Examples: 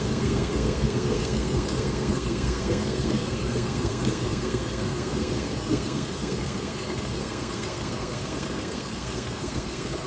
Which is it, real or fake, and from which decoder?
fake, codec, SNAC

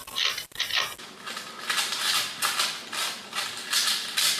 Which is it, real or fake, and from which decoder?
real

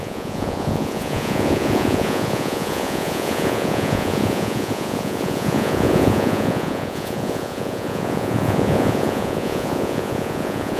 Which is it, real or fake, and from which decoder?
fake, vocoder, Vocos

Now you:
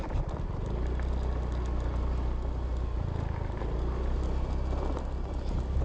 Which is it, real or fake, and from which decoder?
real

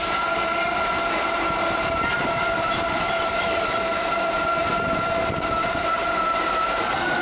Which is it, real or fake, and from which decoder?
fake, vocoder, BigVGAN v2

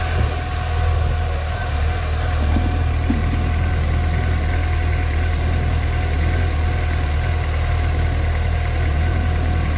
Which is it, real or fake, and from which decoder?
real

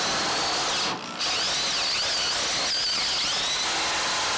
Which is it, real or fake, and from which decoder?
real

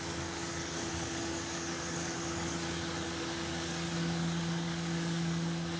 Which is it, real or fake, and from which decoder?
fake, codec, DAC